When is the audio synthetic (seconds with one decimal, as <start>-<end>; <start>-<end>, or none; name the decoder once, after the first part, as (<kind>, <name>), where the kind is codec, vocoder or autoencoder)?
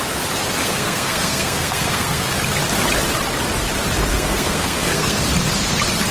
0.6-2.3 (codec, SNAC); 4.1-5.2